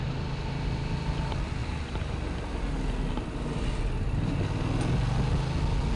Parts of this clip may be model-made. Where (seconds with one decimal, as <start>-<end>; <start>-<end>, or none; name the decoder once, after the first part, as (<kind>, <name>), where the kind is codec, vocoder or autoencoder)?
none